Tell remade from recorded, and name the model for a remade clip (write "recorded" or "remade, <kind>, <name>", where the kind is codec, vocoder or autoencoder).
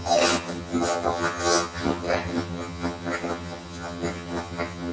remade, vocoder, HiFi-GAN